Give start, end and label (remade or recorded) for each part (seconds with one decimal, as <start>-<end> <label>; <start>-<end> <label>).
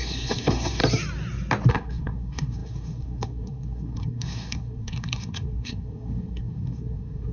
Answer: 0.0-0.8 remade; 0.8-1.7 recorded; 1.7-7.3 remade